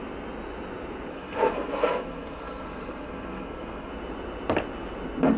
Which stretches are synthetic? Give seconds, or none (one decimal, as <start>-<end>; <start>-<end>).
1.1-3.9